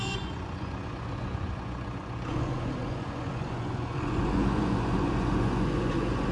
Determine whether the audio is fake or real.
fake